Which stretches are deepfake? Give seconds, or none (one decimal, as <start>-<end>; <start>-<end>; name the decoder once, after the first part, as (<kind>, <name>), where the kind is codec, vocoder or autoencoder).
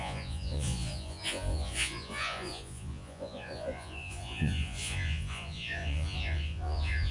0.0-7.1 (vocoder, Vocos)